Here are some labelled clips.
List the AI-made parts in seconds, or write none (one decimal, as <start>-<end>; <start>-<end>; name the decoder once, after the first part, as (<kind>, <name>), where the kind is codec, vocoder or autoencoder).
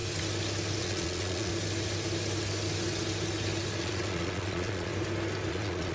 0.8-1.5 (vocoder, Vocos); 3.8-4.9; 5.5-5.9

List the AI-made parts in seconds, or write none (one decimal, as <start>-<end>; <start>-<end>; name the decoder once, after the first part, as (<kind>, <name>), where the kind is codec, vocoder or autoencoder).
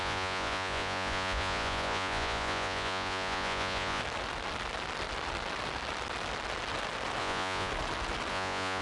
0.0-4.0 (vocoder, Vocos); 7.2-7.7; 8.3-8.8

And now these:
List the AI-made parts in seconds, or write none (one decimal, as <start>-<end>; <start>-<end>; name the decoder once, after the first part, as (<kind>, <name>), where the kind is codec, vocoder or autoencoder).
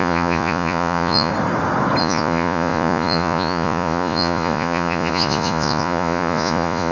0.0-1.3 (vocoder, Vocos); 2.0-6.9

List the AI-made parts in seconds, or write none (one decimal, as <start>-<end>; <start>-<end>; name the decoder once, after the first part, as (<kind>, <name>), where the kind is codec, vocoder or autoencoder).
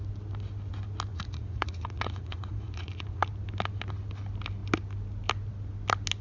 1.1-3.3 (vocoder, Vocos)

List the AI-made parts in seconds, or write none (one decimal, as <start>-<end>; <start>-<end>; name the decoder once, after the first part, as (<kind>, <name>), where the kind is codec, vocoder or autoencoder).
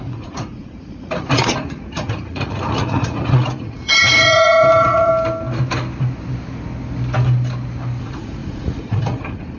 0.0-5.1 (vocoder, Vocos); 8.0-9.6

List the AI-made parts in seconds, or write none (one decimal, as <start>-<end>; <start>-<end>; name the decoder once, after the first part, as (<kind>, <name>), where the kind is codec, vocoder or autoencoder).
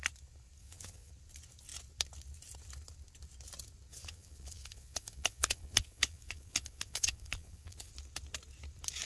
0.6-1.1 (vocoder, Vocos); 3.9-7.9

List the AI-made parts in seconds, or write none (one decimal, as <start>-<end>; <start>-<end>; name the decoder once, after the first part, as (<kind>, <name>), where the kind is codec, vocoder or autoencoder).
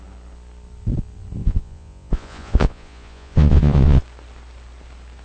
1.4-4.0 (vocoder, Vocos)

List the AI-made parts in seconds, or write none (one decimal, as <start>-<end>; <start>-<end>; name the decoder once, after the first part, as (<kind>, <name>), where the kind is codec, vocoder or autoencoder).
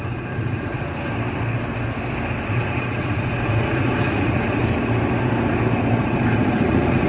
0.0-0.7 (vocoder, Vocos); 2.4-4.6; 6.0-7.1